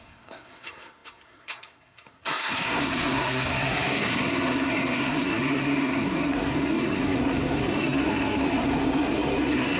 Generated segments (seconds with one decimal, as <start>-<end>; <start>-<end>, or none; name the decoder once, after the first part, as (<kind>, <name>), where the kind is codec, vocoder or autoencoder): 0.0-9.8 (codec, SNAC)